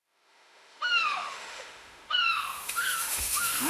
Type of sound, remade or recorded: remade